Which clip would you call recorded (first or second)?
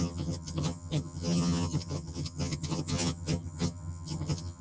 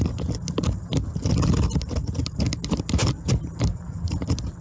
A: second